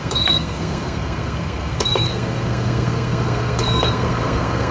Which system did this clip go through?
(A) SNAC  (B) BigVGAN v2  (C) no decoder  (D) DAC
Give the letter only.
A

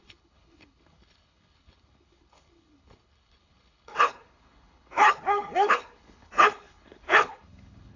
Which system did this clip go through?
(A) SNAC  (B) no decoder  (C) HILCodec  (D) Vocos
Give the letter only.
C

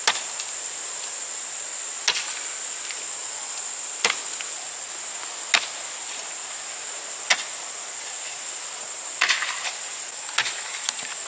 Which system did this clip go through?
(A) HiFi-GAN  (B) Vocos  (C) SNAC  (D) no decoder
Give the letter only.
D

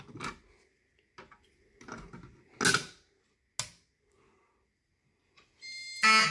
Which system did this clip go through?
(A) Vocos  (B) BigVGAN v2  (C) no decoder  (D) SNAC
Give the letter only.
C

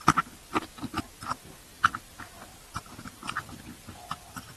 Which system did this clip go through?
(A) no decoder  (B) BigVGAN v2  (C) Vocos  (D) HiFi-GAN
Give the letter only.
A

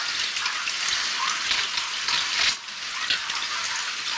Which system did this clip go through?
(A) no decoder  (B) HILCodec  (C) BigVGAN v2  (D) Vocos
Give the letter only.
A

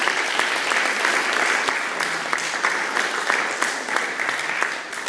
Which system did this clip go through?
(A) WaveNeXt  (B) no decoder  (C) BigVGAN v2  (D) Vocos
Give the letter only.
B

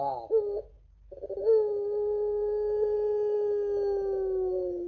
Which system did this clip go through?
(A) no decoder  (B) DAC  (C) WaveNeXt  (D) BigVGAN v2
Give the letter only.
A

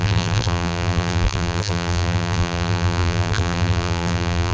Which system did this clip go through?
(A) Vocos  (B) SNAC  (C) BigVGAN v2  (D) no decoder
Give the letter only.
C